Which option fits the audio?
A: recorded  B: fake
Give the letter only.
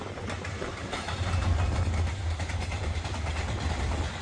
B